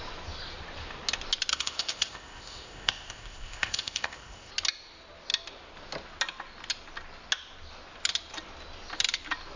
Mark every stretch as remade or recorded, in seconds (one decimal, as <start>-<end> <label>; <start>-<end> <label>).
0.0-1.5 recorded; 1.5-4.5 remade; 4.5-9.6 recorded